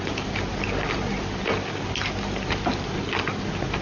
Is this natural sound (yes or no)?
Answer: yes